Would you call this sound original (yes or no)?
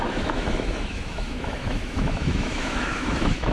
no